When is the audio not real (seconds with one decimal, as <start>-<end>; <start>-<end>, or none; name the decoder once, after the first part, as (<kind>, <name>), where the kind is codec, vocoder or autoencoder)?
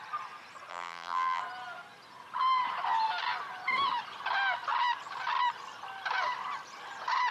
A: 0.7-1.4 (vocoder, BigVGAN v2)